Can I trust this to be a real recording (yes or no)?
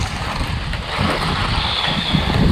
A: yes